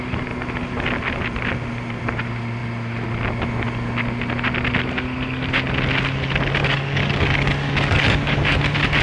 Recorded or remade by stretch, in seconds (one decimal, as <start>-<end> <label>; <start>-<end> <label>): 0.0-6.6 recorded; 6.6-8.6 remade; 8.6-9.0 recorded